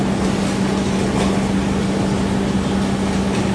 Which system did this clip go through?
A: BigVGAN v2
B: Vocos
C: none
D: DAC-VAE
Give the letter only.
C